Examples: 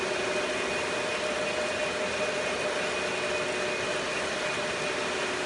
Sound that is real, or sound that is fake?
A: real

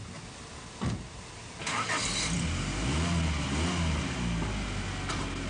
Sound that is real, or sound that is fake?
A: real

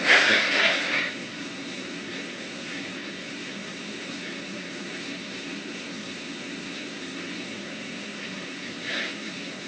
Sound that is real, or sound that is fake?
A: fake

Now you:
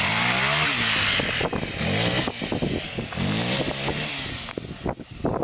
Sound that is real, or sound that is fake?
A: real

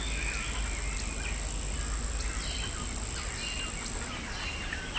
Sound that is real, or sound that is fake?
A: real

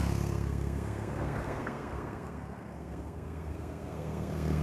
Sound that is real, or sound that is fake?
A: fake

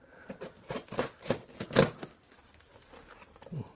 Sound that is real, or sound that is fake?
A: real